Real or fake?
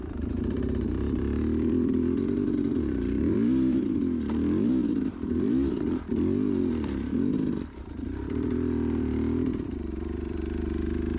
fake